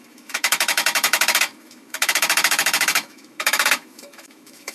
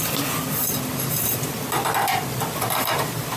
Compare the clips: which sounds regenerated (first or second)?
first